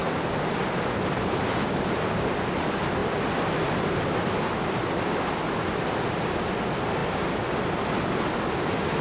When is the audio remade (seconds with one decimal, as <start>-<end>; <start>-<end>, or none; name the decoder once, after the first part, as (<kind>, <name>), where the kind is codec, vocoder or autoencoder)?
none